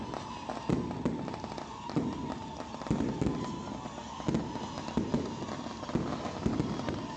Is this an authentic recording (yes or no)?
yes